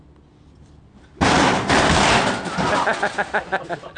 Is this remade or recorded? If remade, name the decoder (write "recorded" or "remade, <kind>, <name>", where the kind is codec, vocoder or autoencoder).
recorded